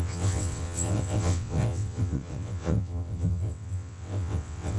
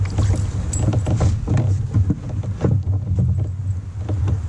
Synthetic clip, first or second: first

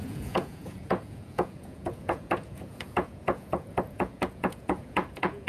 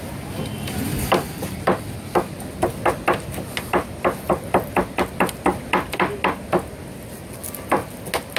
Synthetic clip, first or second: first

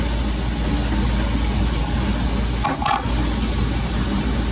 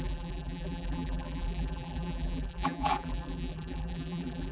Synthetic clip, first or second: second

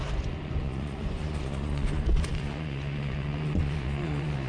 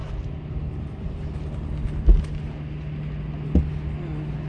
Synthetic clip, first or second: first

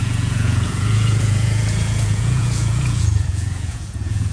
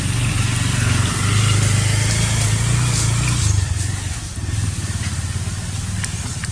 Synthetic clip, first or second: first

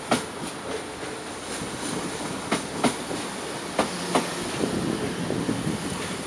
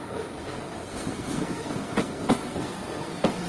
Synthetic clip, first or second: second